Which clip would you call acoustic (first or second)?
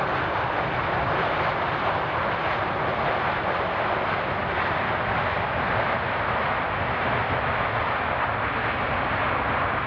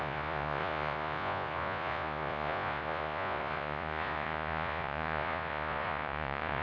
first